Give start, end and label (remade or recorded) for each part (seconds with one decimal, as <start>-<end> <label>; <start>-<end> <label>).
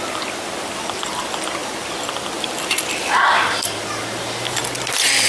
0.0-5.3 recorded